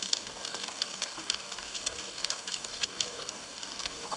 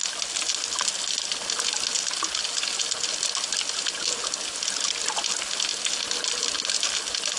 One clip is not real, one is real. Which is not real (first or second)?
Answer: first